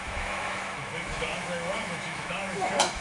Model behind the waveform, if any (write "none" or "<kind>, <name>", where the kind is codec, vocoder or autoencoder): autoencoder, DAC-VAE